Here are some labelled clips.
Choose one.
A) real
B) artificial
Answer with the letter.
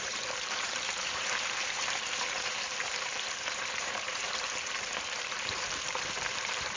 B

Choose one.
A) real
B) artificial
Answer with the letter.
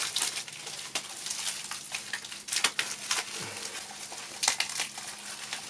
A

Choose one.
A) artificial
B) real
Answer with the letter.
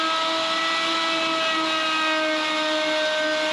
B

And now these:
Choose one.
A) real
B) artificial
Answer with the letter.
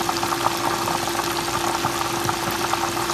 A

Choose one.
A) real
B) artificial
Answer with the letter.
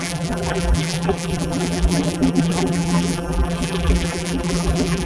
B